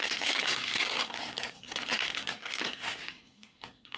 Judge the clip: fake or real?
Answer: fake